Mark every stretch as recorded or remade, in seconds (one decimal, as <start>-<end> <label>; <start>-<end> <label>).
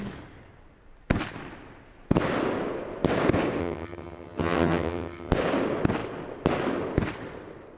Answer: 0.0-3.6 recorded; 3.6-5.3 remade; 5.3-7.8 recorded